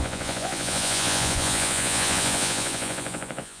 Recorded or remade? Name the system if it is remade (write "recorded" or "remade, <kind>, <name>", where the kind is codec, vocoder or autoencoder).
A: remade, vocoder, Vocos